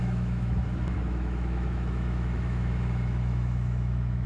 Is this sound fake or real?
fake